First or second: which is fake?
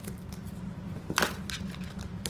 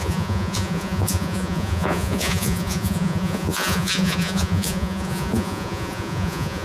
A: second